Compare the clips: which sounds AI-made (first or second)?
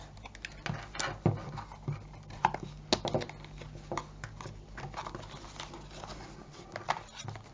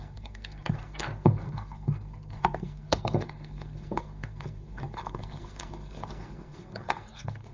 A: second